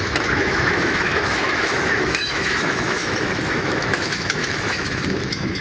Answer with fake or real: fake